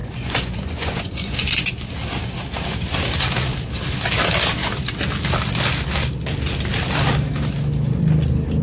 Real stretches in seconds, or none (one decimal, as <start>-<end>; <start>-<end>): 1.7-8.6